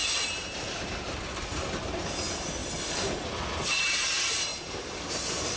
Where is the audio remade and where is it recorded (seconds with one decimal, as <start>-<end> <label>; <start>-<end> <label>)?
0.0-1.9 remade; 1.9-2.6 recorded; 2.6-3.1 remade; 3.1-4.5 recorded; 4.5-5.6 remade